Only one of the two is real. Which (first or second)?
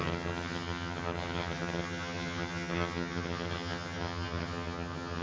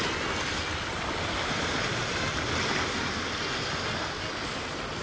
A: second